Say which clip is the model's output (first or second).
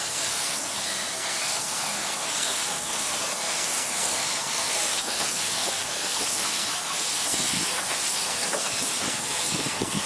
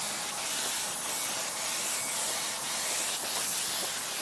first